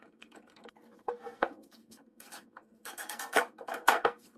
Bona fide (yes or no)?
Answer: no